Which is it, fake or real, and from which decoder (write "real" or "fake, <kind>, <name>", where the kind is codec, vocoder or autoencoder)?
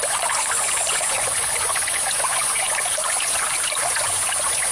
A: fake, vocoder, Vocos